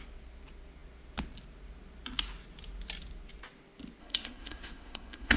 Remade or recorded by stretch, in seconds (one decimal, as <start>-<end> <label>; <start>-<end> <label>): 0.0-4.0 recorded; 4.0-5.4 remade

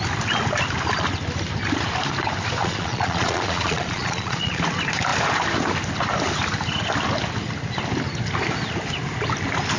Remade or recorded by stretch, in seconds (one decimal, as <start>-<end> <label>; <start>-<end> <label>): 0.0-2.6 recorded; 2.6-4.6 remade; 4.6-9.8 recorded

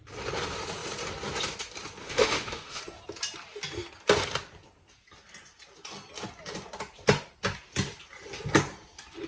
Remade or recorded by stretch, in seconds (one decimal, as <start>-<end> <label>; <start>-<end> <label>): 0.0-2.0 recorded; 2.0-2.8 remade; 2.8-9.3 recorded

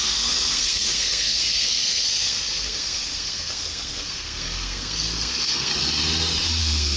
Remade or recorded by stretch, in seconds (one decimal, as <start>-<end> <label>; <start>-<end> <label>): 0.0-5.7 remade; 5.7-6.6 recorded; 6.6-7.0 remade